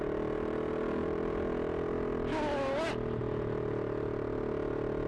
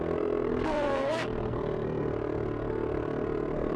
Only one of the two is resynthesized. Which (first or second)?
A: second